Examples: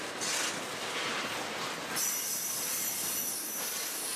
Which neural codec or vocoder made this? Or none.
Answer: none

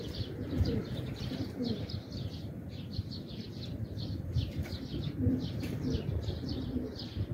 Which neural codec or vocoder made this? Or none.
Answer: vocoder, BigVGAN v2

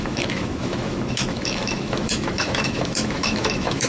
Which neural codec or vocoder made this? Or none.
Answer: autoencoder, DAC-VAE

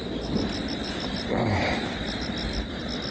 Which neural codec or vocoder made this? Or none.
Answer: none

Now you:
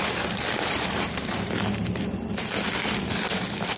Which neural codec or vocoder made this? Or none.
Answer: vocoder, BigVGAN v2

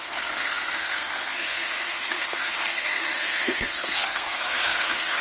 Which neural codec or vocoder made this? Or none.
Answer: codec, SNAC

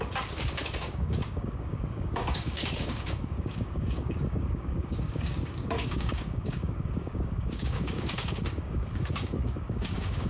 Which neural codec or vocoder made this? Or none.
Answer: codec, DAC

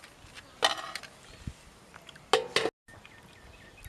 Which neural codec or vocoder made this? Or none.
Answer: none